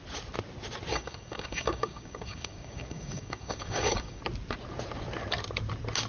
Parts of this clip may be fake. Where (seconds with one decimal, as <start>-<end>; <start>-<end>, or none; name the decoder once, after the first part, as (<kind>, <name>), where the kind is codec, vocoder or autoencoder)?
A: 0.9-4.2 (codec, DAC)